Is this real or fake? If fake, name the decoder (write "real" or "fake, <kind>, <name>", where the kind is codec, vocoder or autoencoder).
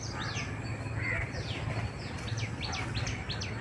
real